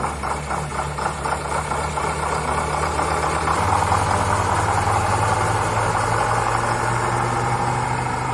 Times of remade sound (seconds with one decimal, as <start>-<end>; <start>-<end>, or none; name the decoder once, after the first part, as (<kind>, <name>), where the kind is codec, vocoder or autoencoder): none